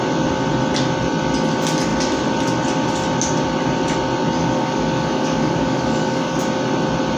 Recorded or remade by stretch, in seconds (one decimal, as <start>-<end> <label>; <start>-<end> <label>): 0.0-4.4 recorded; 4.4-6.4 remade; 6.4-7.2 recorded